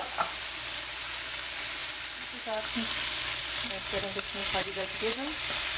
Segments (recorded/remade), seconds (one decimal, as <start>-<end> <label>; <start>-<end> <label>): 0.0-1.8 recorded; 1.8-2.6 remade; 2.6-4.4 recorded; 4.4-5.8 remade